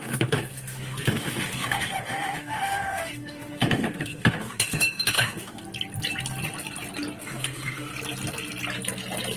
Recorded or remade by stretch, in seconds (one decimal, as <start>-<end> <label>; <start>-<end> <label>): 0.0-5.6 remade; 5.6-7.2 recorded; 7.2-7.9 remade; 7.9-9.4 recorded